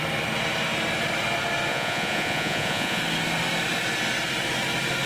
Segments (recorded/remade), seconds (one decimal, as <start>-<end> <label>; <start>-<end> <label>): 0.0-1.7 recorded; 1.7-3.0 remade; 3.0-5.1 recorded